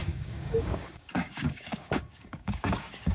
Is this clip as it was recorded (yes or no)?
no